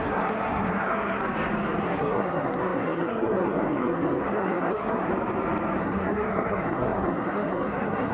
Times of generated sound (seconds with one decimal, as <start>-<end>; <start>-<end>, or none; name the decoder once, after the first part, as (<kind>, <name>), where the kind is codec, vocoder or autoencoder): 0.0-1.2 (codec, SNAC); 1.8-5.1; 5.8-8.1